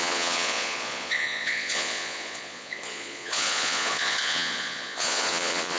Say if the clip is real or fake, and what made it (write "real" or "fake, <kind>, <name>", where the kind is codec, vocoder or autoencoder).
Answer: fake, vocoder, Vocos